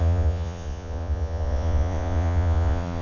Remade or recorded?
remade